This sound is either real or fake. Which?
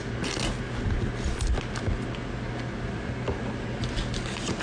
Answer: real